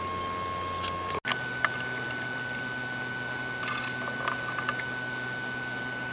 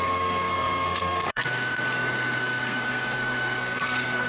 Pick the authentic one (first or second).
first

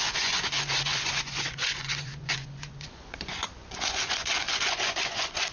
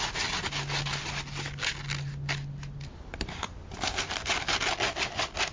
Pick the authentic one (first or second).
second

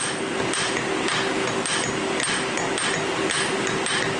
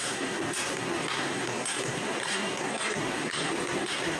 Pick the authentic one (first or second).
first